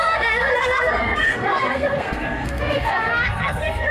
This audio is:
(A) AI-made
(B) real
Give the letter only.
A